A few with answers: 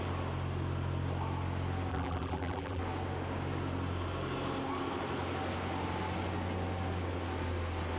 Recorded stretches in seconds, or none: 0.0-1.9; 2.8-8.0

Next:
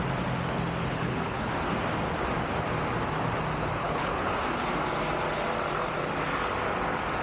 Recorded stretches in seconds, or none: 0.0-0.9; 1.5-3.8; 4.4-7.2

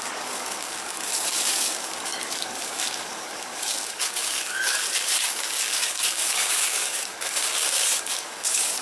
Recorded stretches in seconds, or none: none

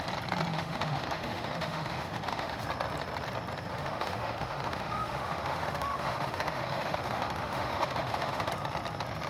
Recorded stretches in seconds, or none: 0.0-0.5; 2.6-3.7; 8.5-9.3

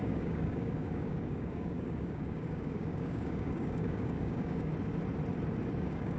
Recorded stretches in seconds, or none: 4.7-5.8

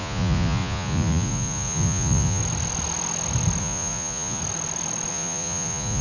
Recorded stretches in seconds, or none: 2.4-3.6; 4.4-5.1